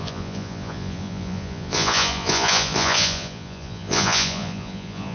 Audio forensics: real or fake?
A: fake